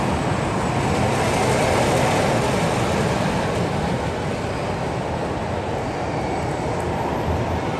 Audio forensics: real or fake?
real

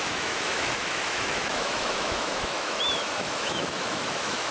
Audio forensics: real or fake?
fake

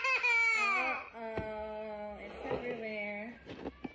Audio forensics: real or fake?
real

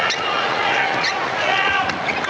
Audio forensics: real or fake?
fake